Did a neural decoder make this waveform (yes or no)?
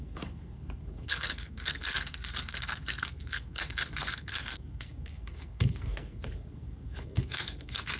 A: yes